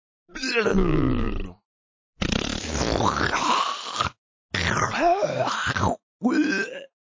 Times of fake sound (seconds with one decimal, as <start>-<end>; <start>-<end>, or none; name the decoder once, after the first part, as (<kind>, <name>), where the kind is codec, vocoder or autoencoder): 0.7-1.3 (vocoder, BigVGAN v2)